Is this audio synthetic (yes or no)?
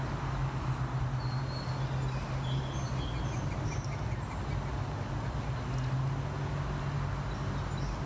no